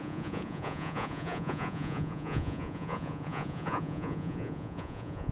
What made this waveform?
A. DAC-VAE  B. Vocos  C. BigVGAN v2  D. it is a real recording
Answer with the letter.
B